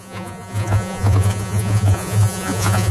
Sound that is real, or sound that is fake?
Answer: fake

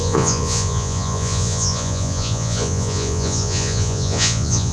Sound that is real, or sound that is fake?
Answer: fake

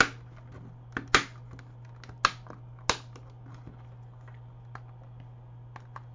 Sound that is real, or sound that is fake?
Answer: real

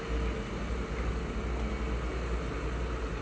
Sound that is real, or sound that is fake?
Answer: real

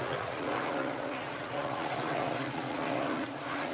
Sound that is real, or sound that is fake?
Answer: fake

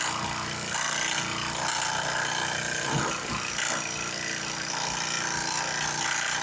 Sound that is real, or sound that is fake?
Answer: real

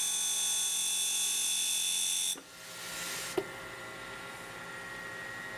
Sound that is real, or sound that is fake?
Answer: real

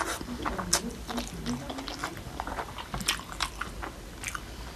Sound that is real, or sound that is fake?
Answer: real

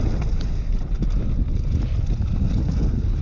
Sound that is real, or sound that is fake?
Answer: real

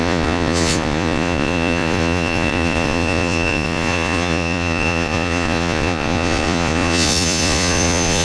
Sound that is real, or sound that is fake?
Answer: fake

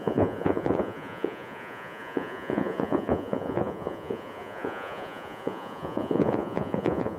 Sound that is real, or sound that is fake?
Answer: fake